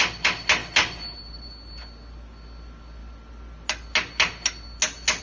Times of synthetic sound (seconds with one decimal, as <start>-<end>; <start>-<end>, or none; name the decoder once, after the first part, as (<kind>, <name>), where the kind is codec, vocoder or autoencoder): none